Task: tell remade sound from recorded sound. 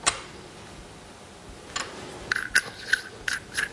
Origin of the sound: recorded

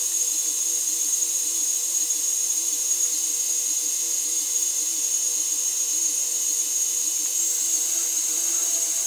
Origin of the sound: remade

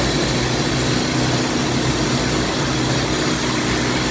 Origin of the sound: recorded